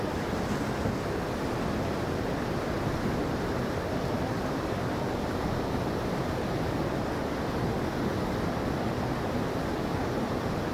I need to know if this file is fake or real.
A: real